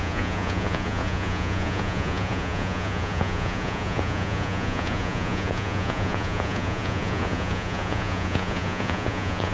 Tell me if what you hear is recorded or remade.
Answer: remade